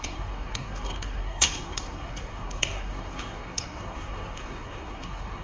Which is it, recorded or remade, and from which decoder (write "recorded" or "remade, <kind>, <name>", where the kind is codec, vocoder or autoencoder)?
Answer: remade, codec, SNAC